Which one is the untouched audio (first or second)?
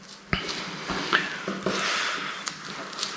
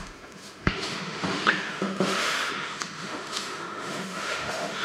first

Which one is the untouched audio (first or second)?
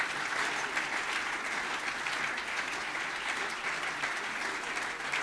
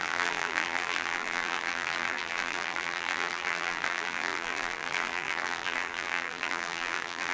first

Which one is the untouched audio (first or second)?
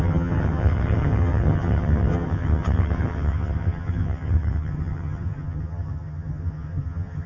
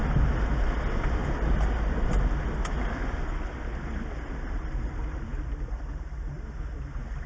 second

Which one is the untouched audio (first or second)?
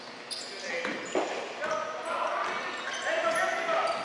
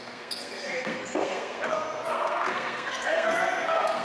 first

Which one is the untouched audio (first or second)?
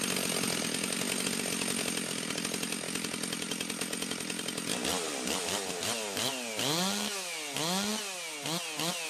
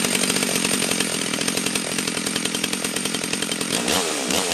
first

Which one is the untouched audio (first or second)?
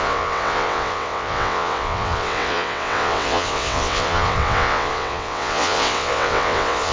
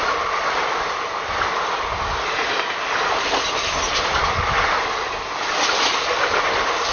second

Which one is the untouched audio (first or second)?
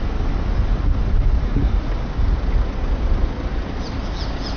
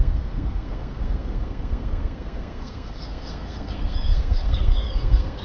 first